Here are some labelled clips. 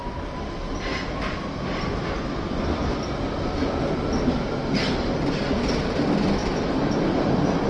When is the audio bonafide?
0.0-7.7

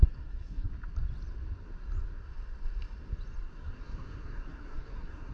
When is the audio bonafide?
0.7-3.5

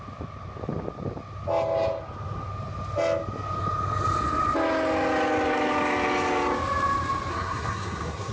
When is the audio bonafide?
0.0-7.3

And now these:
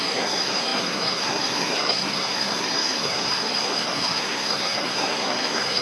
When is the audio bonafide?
none

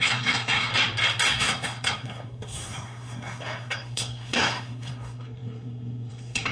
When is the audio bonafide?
0.7-1.3

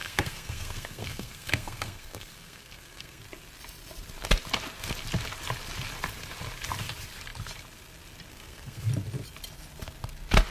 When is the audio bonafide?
3.2-8.3; 8.9-10.5

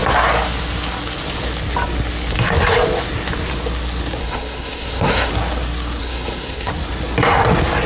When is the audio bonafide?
0.0-4.2; 5.3-6.0; 6.7-7.9

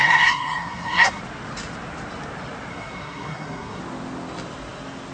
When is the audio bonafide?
1.2-2.7; 3.8-5.1